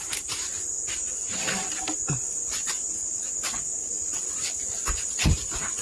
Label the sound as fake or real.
real